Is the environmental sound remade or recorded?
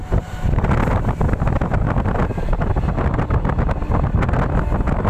recorded